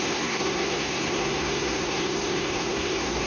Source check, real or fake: fake